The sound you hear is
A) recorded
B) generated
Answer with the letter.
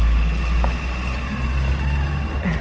A